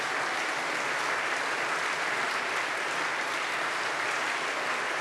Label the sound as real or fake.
real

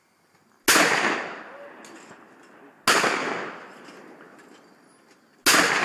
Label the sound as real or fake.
real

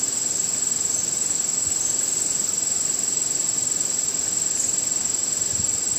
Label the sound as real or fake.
real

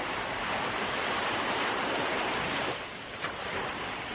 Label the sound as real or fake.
fake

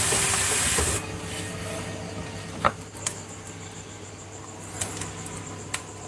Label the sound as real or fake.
fake